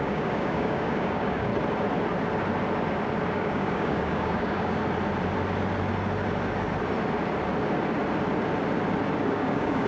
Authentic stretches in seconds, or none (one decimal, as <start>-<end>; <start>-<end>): 1.5-3.3; 4.8-9.3

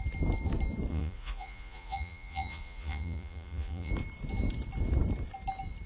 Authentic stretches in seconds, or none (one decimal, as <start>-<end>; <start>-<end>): 0.0-0.9; 3.9-5.9

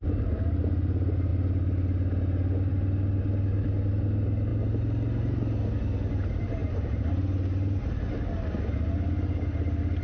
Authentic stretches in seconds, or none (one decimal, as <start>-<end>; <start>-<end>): 0.0-10.0

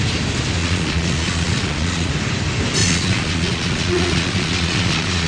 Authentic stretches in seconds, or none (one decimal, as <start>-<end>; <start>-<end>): 0.0-0.6; 2.1-2.8

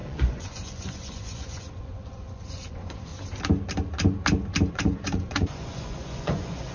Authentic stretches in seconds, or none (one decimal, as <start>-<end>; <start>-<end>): 3.1-4.7

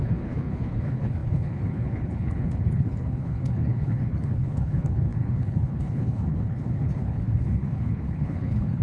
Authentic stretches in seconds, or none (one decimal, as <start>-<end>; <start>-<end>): none